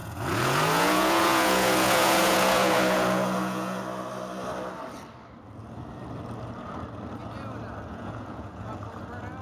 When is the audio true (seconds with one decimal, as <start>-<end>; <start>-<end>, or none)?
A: 3.8-7.9; 8.7-9.4